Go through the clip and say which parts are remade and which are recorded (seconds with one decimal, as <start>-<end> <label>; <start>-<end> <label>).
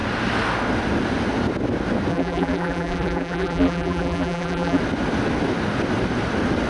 0.0-2.1 recorded; 2.1-4.8 remade; 4.8-6.7 recorded